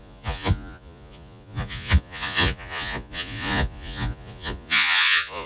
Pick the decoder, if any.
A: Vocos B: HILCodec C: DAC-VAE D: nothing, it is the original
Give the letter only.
A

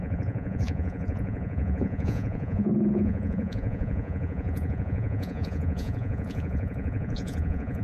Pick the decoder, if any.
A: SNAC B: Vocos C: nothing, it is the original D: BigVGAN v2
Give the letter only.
B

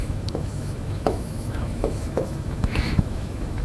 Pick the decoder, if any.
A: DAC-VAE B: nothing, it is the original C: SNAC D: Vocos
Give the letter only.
A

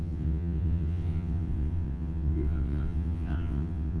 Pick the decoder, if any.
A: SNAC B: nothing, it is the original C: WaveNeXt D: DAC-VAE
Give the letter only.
C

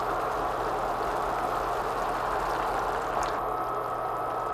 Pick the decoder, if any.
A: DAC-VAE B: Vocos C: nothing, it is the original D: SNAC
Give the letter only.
C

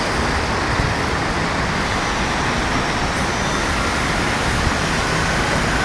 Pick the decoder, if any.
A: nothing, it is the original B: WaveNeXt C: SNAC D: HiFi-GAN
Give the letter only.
A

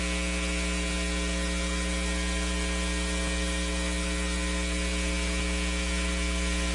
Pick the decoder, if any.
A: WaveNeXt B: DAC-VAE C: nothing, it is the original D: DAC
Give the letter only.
C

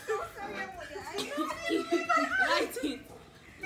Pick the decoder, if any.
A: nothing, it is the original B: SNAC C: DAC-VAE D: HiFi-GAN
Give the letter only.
A